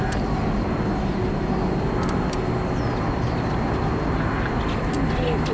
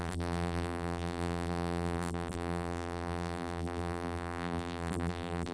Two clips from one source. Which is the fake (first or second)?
second